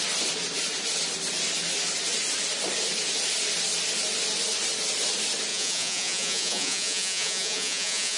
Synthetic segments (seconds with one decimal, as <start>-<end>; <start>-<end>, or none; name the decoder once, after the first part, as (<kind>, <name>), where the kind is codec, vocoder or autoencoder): 5.5-8.2 (vocoder, Vocos)